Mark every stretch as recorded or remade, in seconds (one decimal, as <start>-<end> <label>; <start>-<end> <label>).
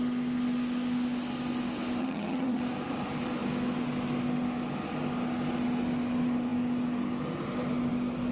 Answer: 0.0-2.0 recorded; 2.0-2.6 remade; 2.6-8.3 recorded